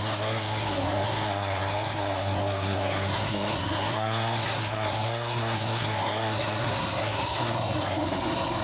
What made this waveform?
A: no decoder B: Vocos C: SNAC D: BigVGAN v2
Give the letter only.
C